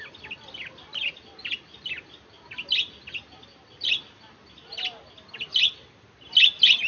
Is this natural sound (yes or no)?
yes